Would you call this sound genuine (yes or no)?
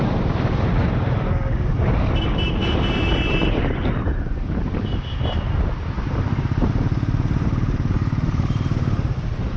no